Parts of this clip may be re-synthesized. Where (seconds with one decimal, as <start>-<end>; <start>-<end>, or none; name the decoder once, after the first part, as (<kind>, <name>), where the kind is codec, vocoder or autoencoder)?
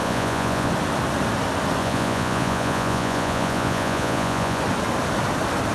0.0-0.7 (vocoder, Vocos); 1.8-4.6